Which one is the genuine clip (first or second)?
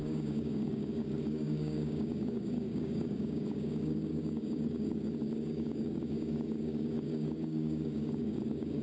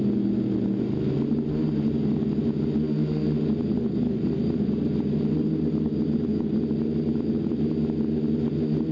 second